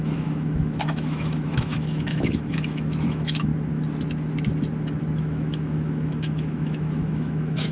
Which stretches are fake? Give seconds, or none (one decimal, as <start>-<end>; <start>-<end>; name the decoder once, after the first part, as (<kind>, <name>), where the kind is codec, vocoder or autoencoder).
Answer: 0.0-3.5 (autoencoder, DAC-VAE); 5.2-7.7